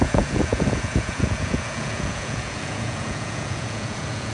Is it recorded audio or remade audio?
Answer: remade